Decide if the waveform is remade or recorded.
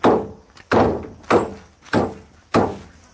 recorded